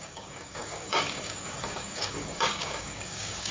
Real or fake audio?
fake